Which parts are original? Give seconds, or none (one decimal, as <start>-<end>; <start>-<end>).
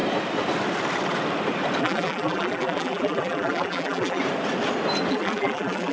0.0-1.8; 4.2-5.1